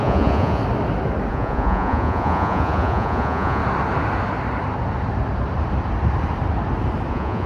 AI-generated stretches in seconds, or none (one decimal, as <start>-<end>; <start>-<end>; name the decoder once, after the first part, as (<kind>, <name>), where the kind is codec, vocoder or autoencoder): 0.0-0.6 (vocoder, Vocos); 1.3-3.6; 7.1-7.5

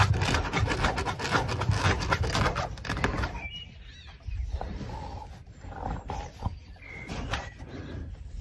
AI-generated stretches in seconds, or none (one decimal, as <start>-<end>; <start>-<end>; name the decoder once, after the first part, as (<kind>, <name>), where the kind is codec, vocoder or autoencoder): none

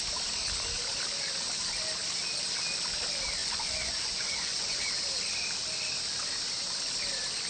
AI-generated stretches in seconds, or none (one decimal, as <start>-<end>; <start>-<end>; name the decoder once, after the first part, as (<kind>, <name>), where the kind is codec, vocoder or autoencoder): 3.4-4.9 (vocoder, Vocos)

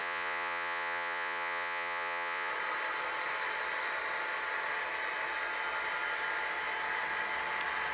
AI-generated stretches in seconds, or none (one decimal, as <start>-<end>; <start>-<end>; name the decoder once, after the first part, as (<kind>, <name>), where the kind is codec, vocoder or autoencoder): 0.0-2.5 (vocoder, Vocos)

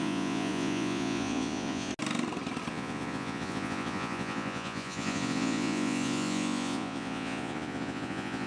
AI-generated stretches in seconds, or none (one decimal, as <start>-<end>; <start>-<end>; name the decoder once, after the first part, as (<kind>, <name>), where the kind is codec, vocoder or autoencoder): 0.0-1.9 (vocoder, Vocos); 2.7-8.5

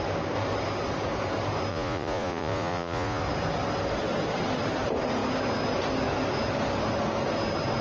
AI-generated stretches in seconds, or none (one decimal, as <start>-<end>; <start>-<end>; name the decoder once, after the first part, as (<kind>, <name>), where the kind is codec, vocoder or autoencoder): 1.7-3.2 (vocoder, Vocos)

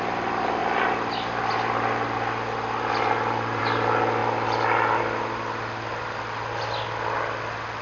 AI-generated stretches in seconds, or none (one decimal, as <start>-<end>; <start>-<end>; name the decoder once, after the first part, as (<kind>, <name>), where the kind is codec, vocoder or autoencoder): none

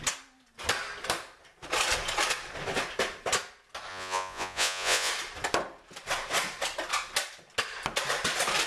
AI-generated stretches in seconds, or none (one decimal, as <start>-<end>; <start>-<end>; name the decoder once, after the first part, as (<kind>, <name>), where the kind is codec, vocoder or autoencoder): 3.9-5.1 (vocoder, Vocos)